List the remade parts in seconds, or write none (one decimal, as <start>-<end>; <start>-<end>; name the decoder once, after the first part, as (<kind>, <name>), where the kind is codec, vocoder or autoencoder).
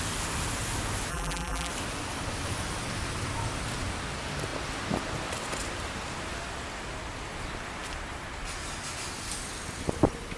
1.1-1.7 (vocoder, BigVGAN v2)